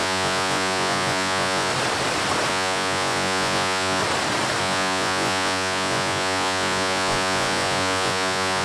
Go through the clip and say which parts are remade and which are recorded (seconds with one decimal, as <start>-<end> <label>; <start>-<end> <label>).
0.0-1.7 remade; 1.7-2.5 recorded; 2.5-4.0 remade; 4.0-4.6 recorded; 4.6-8.6 remade